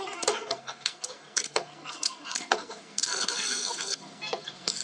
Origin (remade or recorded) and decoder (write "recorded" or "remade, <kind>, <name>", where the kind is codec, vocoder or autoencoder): remade, codec, SNAC